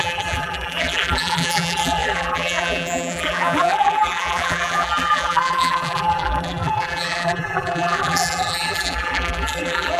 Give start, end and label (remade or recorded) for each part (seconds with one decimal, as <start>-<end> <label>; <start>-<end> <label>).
0.0-10.0 remade